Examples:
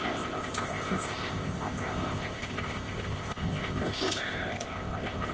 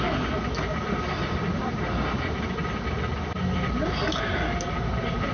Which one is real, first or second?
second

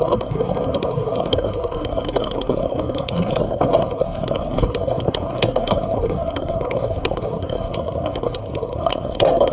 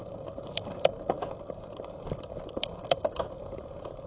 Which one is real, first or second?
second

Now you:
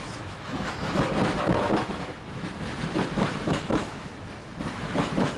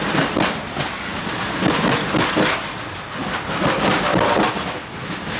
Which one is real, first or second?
second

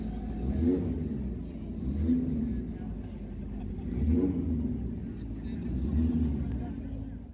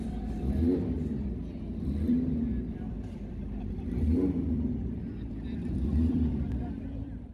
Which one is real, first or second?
first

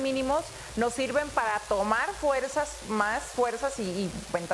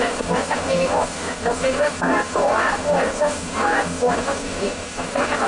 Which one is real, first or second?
first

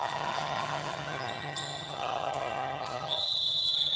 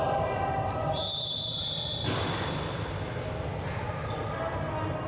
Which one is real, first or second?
second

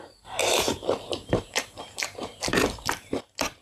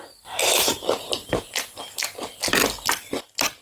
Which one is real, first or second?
second